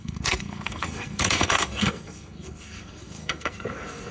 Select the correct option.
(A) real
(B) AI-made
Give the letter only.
B